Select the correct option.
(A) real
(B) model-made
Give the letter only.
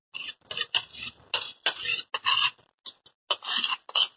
A